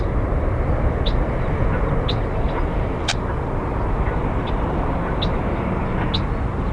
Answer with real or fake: real